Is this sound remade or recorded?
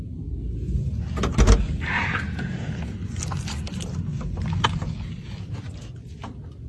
recorded